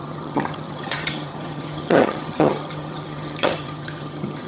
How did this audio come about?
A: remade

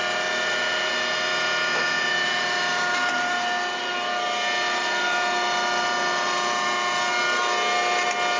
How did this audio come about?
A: recorded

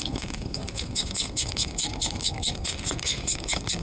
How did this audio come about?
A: remade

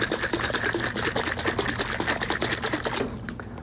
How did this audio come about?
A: recorded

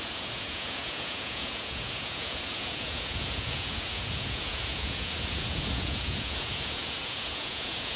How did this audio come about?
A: remade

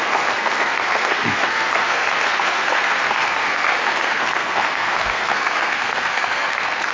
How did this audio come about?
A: remade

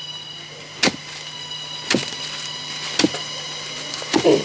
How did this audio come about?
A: recorded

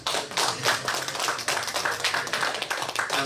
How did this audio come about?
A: recorded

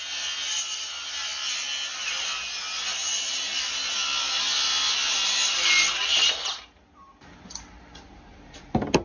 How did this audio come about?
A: recorded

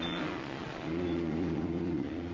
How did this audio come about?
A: remade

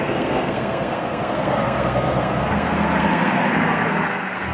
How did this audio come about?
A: remade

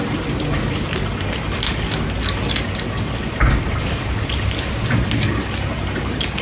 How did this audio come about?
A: recorded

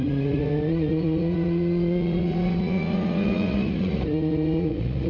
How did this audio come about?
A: remade